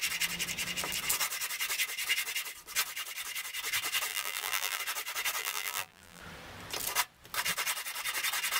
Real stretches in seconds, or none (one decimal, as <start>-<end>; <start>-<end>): 0.0-4.1; 4.8-5.4; 6.2-8.6